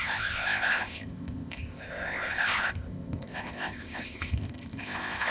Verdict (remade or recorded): remade